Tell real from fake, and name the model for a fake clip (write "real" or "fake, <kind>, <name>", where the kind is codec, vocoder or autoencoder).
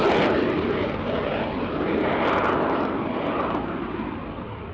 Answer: real